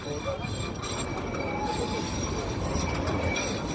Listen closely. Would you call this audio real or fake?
real